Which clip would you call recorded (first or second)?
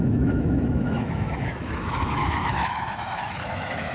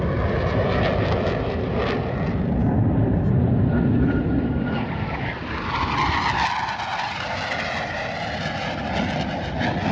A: second